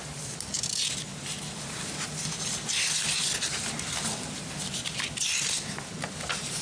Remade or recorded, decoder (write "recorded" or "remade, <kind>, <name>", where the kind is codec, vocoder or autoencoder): recorded